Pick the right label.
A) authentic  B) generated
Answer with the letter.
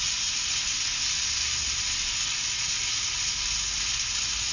A